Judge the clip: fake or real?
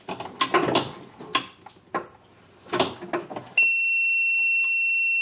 real